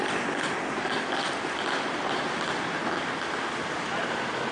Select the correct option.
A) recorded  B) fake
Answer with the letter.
A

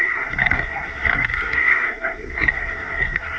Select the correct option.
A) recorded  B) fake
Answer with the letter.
B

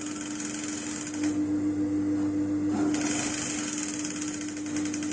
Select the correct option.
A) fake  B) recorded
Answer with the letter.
B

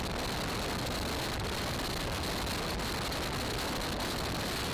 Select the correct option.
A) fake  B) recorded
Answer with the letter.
B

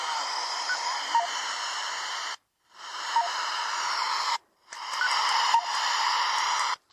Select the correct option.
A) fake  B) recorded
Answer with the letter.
A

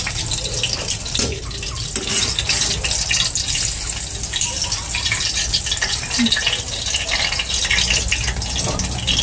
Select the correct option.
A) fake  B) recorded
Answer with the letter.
B